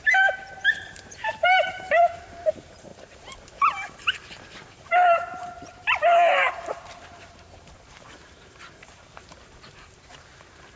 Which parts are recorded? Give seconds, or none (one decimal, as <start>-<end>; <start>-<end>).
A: none